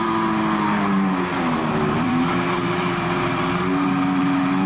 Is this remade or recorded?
remade